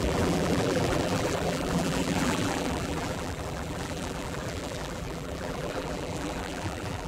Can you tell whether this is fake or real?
fake